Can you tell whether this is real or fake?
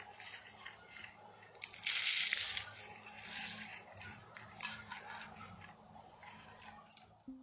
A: real